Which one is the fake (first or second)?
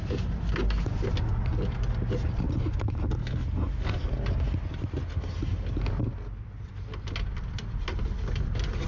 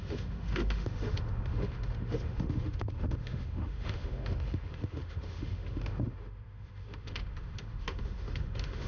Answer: second